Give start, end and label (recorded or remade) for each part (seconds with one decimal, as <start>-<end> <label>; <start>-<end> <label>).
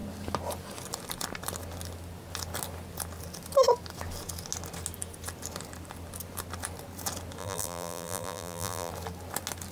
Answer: 0.0-7.4 recorded; 7.4-8.9 remade; 8.9-9.7 recorded